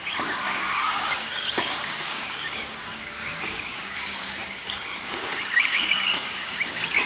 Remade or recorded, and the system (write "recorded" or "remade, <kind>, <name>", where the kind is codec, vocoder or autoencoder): remade, codec, DAC